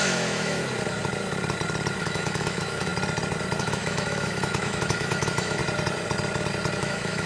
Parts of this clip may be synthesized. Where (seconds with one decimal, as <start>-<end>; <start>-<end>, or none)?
0.0-0.6; 2.0-2.9; 3.6-5.6; 6.8-7.3

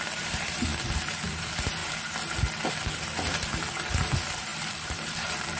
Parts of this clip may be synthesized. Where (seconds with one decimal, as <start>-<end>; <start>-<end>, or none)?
0.0-1.8; 2.7-5.6

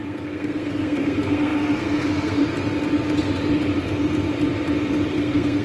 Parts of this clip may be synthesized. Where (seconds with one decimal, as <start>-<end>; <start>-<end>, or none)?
0.0-2.4; 5.1-5.6

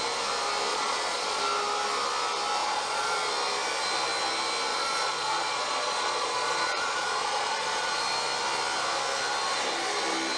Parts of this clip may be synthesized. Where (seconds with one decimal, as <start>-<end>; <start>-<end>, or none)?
0.7-1.4; 2.6-3.3; 4.7-8.0